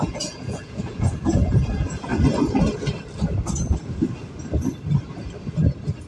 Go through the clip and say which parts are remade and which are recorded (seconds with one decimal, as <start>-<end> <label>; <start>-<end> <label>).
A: 0.0-2.1 remade; 2.1-6.1 recorded